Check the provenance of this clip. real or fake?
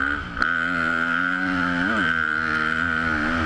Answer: real